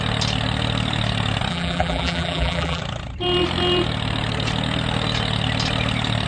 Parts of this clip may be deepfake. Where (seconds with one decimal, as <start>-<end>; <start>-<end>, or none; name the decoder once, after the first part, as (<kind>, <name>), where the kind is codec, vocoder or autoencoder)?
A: 1.5-2.8 (vocoder, BigVGAN v2)